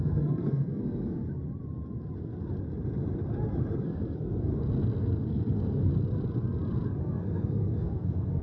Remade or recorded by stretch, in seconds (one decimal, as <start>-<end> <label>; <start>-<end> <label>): 0.0-1.2 remade; 1.2-3.8 recorded; 3.8-4.5 remade; 4.5-5.0 recorded; 5.0-5.9 remade; 5.9-7.0 recorded; 7.0-8.4 remade